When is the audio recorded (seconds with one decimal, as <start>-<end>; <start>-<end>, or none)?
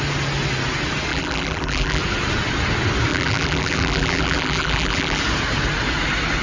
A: 0.0-1.1; 2.0-3.1; 5.2-6.4